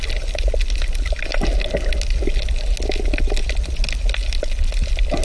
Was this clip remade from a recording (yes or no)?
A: no